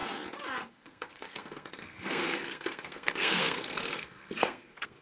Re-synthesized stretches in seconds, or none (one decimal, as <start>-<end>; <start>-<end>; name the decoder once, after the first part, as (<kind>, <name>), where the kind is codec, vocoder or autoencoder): 0.7-5.0 (codec, SNAC)

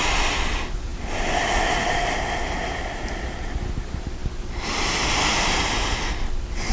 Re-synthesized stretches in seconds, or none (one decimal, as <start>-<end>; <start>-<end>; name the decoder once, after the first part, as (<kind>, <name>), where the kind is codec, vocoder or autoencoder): none

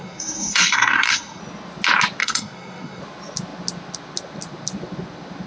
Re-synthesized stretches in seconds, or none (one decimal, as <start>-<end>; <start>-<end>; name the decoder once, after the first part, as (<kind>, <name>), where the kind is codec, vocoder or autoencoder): 0.0-1.4 (codec, SNAC); 2.2-3.0

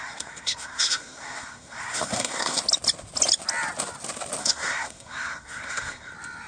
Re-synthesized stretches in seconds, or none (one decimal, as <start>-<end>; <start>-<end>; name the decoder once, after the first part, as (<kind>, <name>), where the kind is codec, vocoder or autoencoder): 0.0-2.6 (codec, SNAC); 4.4-6.1

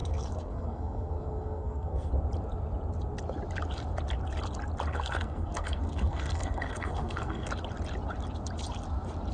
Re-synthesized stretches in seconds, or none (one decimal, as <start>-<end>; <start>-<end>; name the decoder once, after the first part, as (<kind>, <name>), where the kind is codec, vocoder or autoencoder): 0.0-2.1 (codec, SNAC); 4.9-7.5